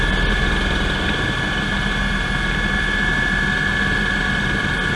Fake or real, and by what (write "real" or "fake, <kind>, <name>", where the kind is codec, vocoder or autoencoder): real